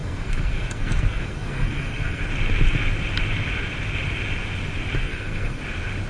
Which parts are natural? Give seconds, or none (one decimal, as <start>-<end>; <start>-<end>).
2.2-5.0; 5.6-6.1

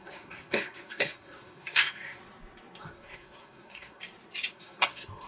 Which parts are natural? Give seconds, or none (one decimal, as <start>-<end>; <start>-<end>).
2.2-2.8; 4.0-4.5

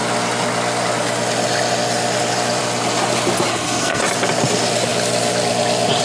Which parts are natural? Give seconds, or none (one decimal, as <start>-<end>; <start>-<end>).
0.0-3.5; 4.0-6.0

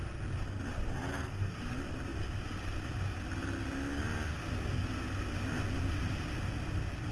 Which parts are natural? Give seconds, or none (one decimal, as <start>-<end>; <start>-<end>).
0.0-1.1; 1.6-7.1

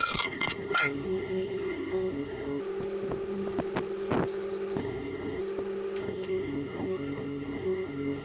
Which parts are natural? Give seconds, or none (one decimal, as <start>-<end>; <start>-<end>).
2.6-4.8; 5.4-6.0

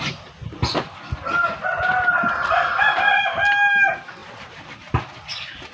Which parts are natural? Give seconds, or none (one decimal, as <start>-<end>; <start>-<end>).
0.0-5.7

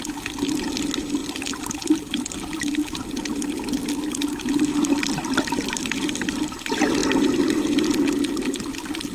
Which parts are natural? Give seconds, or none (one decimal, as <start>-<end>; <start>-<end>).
0.0-9.1